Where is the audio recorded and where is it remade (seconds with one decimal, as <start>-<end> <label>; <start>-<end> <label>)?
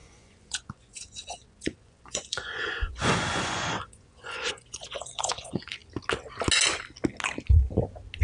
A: 0.0-5.8 remade; 5.8-8.2 recorded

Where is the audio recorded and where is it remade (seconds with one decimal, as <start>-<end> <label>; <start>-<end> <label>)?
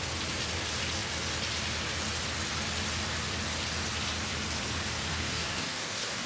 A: 0.0-5.1 recorded; 5.1-6.3 remade